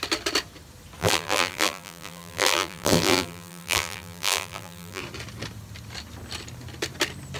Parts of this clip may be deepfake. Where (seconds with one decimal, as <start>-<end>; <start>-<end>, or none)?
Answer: 1.0-5.0